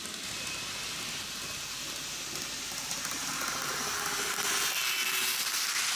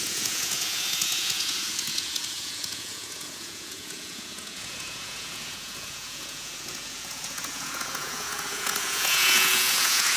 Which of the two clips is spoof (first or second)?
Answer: second